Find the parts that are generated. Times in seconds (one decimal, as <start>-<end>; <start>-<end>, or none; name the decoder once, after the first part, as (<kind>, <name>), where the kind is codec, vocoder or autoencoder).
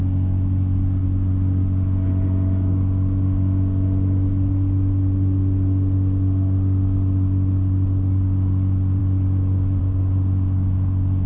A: none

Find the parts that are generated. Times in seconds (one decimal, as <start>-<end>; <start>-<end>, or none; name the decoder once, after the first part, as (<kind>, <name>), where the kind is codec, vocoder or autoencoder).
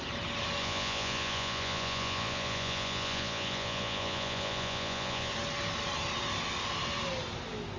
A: 0.6-5.3 (vocoder, Vocos)